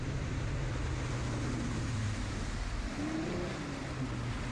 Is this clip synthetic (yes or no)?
no